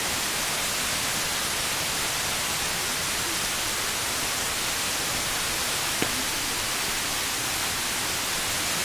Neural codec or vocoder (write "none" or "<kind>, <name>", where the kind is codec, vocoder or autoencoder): none